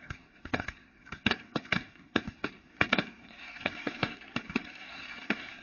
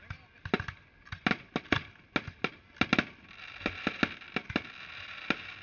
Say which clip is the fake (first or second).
first